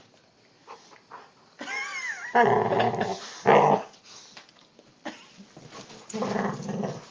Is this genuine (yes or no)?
yes